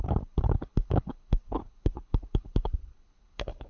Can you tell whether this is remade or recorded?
remade